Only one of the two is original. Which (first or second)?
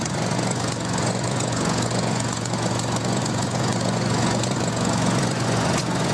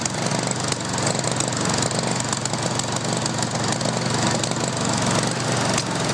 second